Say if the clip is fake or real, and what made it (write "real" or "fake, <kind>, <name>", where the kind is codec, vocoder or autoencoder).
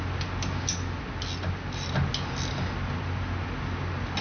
real